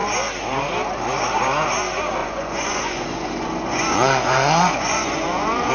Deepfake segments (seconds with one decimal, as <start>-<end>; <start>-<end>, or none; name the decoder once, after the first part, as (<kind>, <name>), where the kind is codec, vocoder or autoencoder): 2.2-5.7 (vocoder, Vocos)